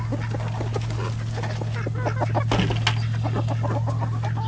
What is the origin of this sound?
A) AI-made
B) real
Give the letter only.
B